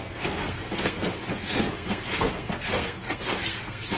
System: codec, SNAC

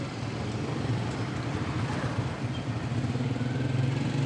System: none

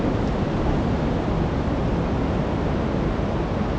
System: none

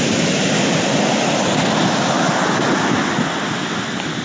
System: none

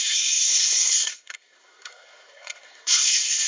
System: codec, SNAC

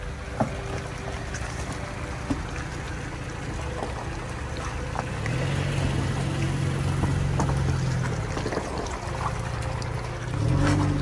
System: none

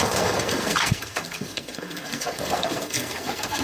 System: codec, SNAC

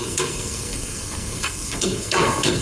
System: codec, SNAC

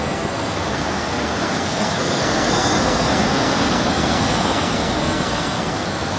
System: codec, SNAC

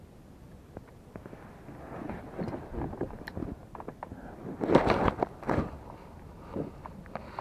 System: none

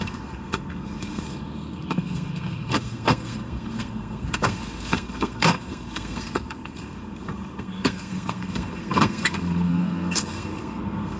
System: codec, SNAC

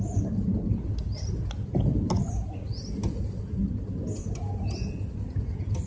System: none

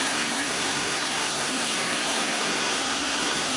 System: codec, SNAC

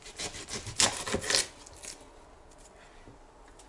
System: none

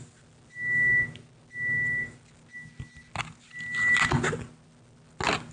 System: none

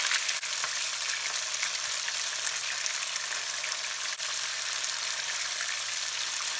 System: none